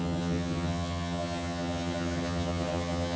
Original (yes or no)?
no